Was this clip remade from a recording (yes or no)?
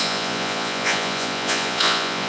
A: yes